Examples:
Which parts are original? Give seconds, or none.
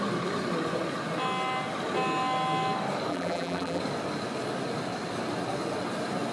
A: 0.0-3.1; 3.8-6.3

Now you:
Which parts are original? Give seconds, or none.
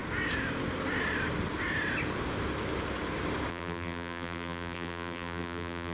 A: 0.0-3.5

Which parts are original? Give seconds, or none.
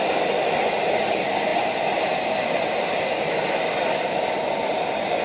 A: none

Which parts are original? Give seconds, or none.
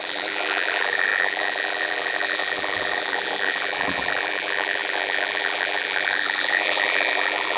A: none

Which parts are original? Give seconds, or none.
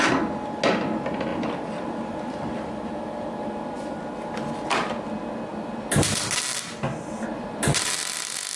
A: 0.0-1.3; 4.0-5.5; 6.4-7.3; 8.1-8.6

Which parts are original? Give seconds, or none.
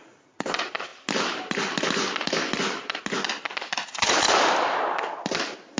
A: 0.0-5.8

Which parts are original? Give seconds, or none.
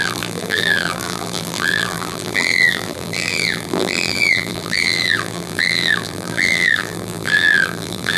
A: none